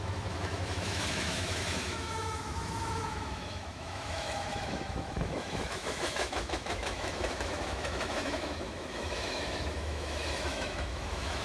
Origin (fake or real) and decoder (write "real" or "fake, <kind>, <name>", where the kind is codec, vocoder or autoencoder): fake, autoencoder, DAC-VAE